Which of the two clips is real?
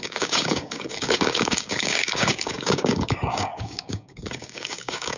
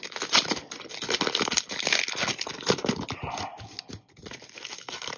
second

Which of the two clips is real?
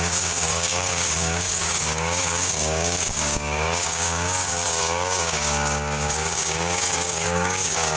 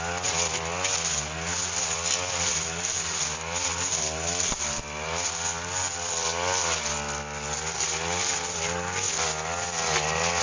second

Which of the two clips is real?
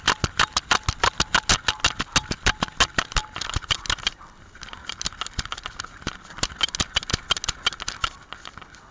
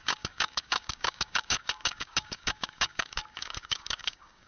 first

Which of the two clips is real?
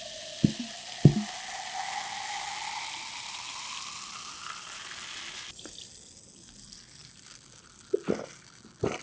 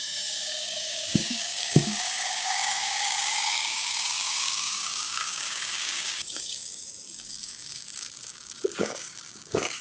first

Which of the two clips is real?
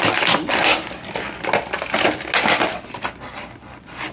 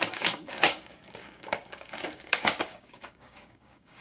first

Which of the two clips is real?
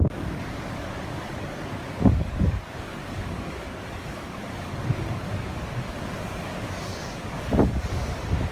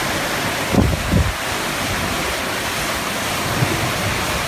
second